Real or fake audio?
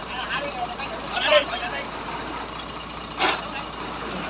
fake